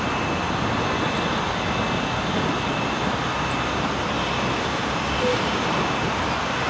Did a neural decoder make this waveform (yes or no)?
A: no